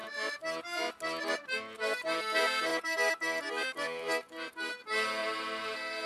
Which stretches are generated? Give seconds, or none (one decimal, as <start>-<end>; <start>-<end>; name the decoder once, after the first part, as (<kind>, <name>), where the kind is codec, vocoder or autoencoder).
2.7-4.7 (vocoder, BigVGAN v2); 5.2-6.1